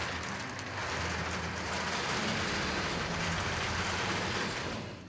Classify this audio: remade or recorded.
remade